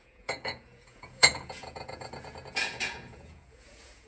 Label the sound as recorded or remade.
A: remade